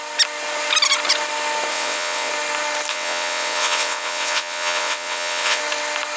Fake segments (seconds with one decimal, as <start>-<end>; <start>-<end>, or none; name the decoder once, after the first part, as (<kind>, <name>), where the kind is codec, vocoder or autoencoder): 1.7-2.3 (vocoder, WaveNeXt); 2.9-5.6